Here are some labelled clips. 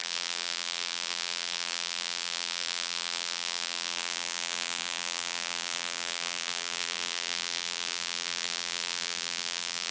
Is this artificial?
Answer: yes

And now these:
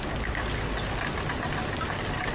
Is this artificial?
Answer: no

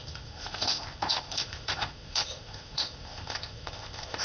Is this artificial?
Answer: yes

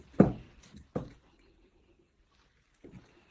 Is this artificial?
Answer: no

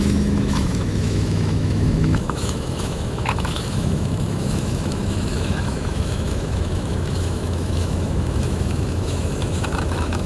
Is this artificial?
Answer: yes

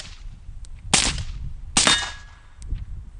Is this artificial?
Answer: no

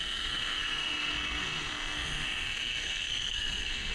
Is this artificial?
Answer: yes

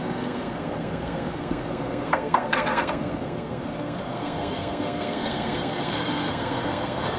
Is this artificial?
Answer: yes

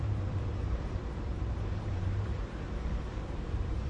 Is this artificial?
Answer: yes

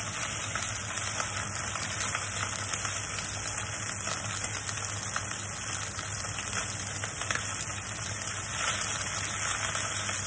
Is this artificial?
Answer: no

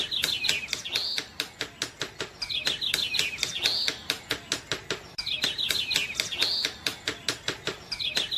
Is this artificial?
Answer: no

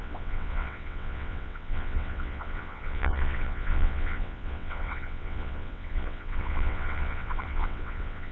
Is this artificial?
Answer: yes